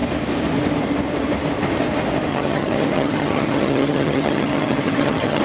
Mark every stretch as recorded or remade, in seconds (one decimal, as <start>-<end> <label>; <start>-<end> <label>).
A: 0.0-2.3 recorded; 2.3-5.4 remade